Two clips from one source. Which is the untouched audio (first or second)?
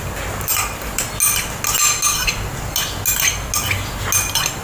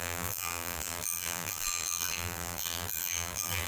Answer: first